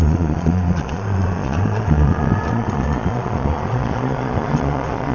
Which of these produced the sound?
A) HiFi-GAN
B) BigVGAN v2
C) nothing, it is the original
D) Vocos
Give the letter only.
D